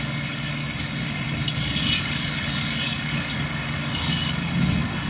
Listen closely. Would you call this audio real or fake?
fake